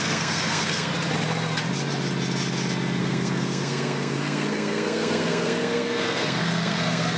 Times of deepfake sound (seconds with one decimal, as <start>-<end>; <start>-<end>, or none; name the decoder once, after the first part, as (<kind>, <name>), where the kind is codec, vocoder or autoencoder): 0.0-0.9 (codec, SNAC); 3.0-7.2